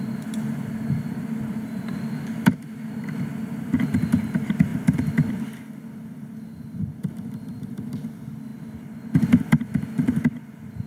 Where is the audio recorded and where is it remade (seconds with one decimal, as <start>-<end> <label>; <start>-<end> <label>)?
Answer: 0.0-10.9 recorded